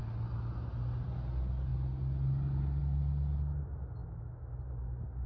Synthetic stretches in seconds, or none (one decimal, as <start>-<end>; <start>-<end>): 4.0-4.6